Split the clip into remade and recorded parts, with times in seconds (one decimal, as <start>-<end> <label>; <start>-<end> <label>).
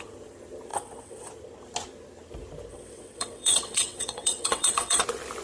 0.0-0.7 recorded; 0.7-1.3 remade; 1.3-2.7 recorded; 2.7-5.0 remade; 5.0-5.4 recorded